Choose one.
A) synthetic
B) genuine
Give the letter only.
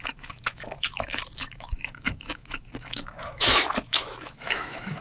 A